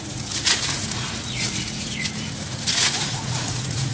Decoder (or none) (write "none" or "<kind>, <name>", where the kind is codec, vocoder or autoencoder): vocoder, Vocos